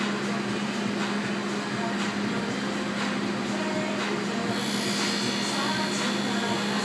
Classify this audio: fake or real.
real